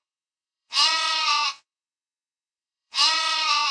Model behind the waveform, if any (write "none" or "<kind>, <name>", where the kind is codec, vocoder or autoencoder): vocoder, WaveNeXt